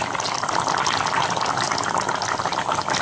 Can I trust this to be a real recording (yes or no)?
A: yes